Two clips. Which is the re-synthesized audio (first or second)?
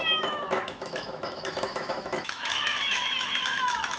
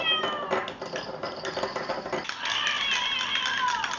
first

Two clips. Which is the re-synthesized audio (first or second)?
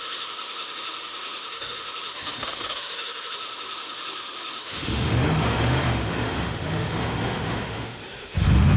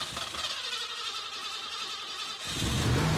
first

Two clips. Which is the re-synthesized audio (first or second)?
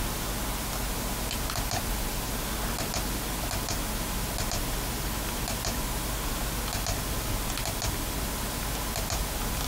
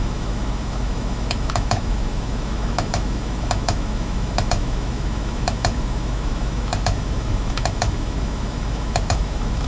second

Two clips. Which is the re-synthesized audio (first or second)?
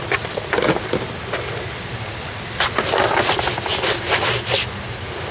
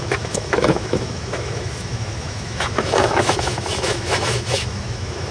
second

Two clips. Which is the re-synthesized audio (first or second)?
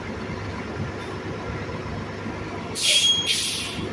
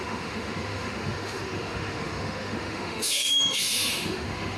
second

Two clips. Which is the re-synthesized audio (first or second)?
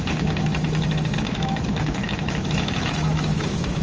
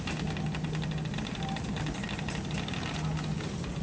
first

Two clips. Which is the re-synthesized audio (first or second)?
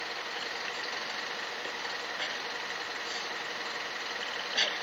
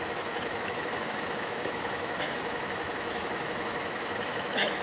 second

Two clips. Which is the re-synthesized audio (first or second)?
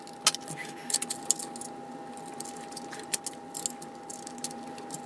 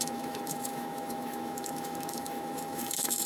second